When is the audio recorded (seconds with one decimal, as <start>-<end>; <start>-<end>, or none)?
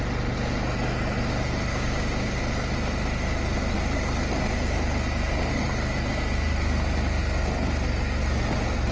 0.0-1.7; 2.3-8.9